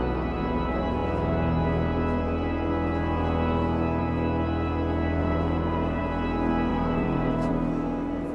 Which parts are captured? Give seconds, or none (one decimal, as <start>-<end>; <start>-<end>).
0.0-5.2; 6.0-6.7; 7.5-8.3